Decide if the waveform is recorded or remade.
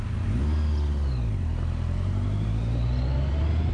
recorded